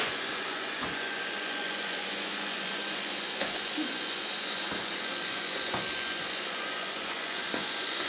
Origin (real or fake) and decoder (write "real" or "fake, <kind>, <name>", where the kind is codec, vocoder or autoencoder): fake, vocoder, Vocos